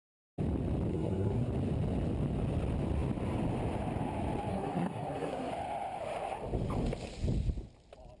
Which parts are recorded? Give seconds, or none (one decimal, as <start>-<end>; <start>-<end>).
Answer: 0.0-0.9; 1.5-4.5; 5.5-8.2